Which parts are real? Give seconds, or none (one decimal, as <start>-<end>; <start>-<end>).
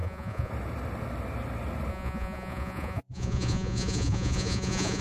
0.5-1.9